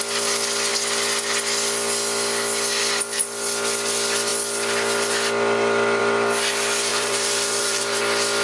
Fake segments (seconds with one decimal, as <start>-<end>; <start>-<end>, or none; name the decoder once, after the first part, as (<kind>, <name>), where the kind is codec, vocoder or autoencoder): 6.9-8.0 (vocoder, BigVGAN v2)